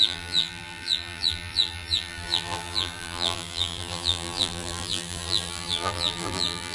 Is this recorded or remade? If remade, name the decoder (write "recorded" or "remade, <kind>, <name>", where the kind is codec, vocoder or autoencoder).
remade, vocoder, BigVGAN v2